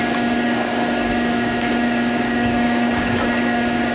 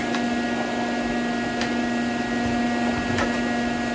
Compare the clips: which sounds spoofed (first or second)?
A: first